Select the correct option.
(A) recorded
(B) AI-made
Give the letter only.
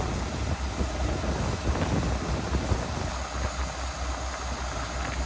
A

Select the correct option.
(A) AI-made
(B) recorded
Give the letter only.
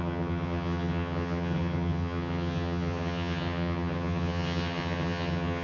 A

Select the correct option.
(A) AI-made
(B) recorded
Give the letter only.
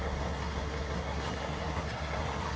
A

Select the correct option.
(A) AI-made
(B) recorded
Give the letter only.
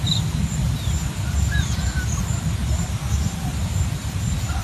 B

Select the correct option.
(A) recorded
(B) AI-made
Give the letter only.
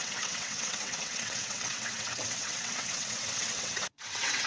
B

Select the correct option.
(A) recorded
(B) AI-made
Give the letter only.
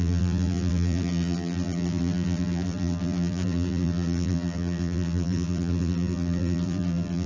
B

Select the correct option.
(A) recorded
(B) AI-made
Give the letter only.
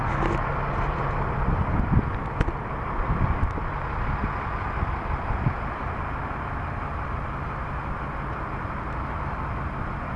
A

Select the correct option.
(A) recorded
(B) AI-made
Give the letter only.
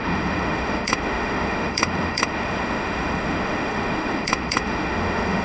B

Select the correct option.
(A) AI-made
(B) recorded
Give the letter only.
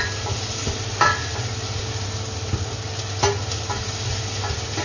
B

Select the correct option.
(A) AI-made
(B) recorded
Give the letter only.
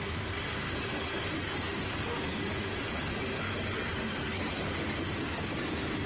B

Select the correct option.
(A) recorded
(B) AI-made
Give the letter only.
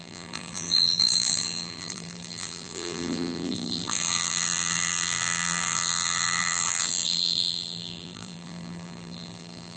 B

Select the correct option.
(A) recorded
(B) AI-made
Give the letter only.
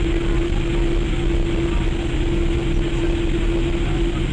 A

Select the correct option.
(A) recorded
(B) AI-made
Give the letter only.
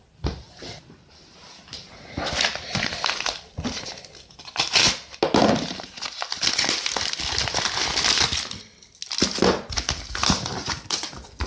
A